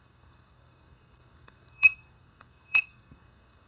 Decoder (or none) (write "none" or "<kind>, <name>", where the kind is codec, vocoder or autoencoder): codec, SNAC